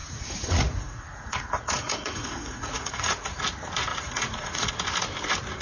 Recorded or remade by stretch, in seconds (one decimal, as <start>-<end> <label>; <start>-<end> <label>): 0.0-3.4 remade; 3.4-3.9 recorded; 3.9-4.7 remade; 4.7-5.6 recorded